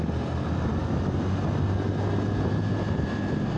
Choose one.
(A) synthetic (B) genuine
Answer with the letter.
B